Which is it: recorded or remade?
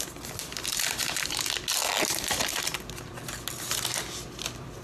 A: recorded